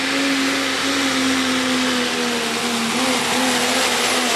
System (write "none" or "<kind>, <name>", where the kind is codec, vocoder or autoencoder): none